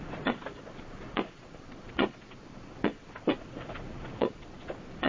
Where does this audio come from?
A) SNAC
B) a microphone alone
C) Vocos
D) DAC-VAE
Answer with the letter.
C